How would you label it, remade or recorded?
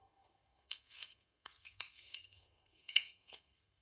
remade